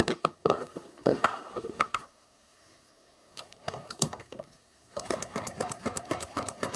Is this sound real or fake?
fake